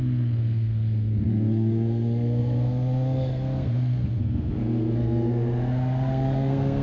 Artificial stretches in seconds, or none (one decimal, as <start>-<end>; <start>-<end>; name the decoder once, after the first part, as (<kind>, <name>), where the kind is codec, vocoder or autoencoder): 0.0-6.8 (codec, SNAC)